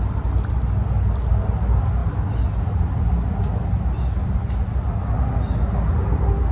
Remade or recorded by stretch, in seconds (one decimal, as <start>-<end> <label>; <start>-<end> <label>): 0.0-6.5 recorded